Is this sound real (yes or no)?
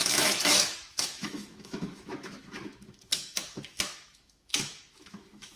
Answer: no